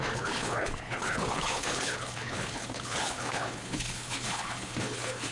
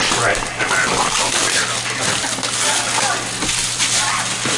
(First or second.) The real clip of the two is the second